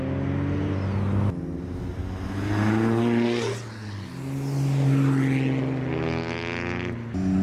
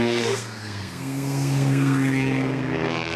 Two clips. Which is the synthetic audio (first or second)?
second